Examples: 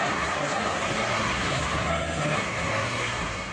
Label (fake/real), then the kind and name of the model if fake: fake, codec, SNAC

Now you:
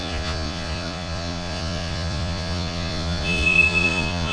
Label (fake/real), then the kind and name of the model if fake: fake, vocoder, Vocos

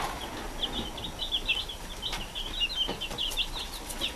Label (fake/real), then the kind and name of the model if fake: real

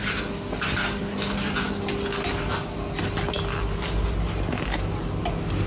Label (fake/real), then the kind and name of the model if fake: real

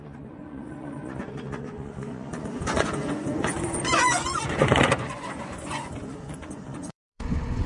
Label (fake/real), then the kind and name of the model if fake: fake, vocoder, Vocos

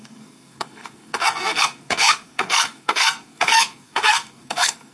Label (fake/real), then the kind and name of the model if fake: fake, codec, SNAC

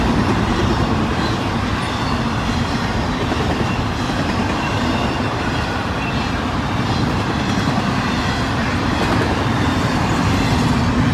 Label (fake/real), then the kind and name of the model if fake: fake, vocoder, BigVGAN v2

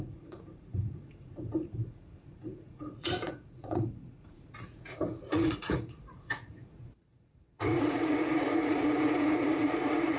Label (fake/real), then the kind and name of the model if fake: fake, vocoder, Vocos